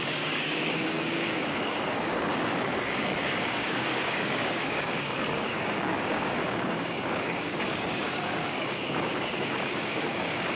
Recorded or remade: remade